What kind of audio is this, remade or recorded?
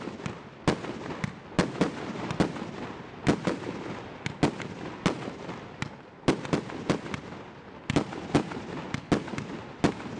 recorded